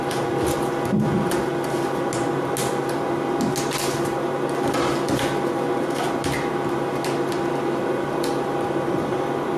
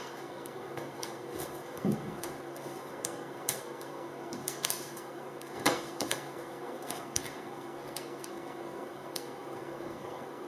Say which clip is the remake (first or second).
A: second